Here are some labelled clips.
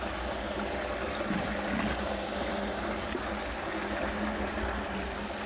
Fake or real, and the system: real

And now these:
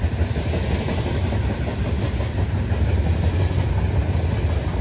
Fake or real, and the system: real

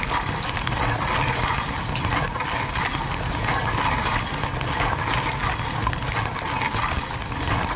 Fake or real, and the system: real